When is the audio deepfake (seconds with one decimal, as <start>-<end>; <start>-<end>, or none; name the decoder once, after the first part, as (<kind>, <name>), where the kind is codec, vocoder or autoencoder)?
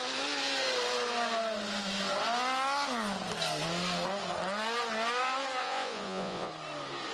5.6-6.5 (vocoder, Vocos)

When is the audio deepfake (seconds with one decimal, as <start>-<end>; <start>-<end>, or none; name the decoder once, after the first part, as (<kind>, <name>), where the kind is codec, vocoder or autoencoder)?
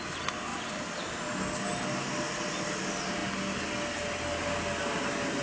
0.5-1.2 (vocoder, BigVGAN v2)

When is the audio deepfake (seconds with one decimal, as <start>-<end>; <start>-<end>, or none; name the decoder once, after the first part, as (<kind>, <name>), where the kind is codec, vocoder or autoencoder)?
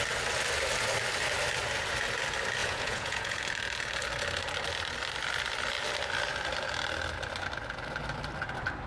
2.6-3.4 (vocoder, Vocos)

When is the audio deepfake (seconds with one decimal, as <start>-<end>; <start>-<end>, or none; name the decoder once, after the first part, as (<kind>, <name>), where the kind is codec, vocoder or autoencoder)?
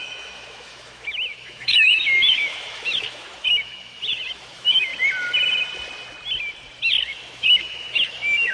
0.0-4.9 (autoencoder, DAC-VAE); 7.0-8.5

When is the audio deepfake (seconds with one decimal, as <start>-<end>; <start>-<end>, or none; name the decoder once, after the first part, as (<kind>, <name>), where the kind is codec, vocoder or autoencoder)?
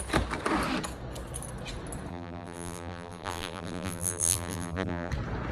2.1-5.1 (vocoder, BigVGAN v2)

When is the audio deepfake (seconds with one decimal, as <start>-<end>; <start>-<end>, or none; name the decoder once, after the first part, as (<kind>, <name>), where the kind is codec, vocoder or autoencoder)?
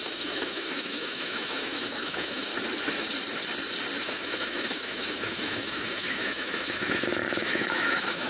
0.0-2.5 (autoencoder, DAC-VAE); 4.0-8.3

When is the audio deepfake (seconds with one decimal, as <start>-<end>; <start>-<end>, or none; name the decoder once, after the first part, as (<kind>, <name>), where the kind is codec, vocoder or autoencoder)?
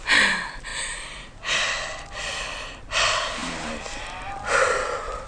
none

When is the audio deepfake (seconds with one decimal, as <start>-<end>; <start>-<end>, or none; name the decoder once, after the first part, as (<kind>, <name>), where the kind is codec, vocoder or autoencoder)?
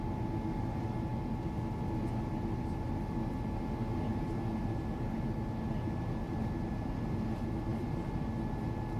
7.7-8.3 (vocoder, BigVGAN v2)